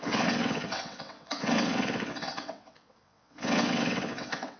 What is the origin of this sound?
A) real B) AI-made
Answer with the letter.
B